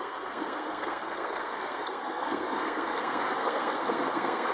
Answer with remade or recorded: remade